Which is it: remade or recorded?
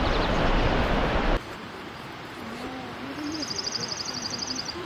remade